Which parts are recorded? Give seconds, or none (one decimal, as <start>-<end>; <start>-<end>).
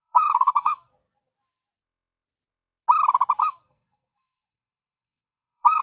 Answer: 0.9-3.4